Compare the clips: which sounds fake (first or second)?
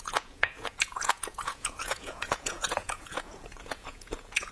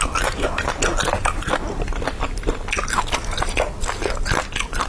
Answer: first